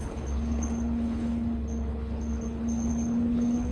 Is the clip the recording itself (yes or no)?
no